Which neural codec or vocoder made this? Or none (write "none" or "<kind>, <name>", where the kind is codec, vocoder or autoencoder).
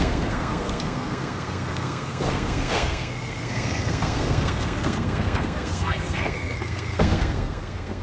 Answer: codec, SNAC